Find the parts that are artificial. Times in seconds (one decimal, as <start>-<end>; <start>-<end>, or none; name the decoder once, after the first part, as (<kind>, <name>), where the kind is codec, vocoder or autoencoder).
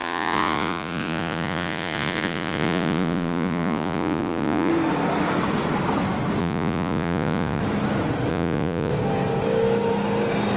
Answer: 0.0-4.7 (vocoder, Vocos); 6.4-7.6; 8.3-8.9